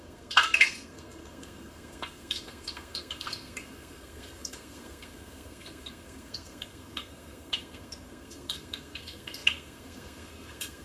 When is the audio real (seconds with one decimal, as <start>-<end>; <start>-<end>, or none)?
none